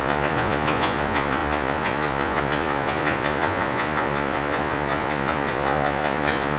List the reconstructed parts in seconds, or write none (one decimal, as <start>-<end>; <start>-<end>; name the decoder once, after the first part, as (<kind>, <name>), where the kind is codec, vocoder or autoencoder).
0.0-6.6 (vocoder, Vocos)